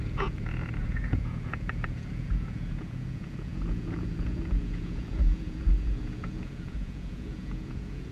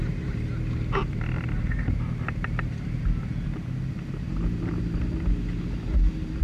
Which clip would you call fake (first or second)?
first